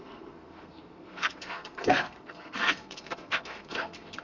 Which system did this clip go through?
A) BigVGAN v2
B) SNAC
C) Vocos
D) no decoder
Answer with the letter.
B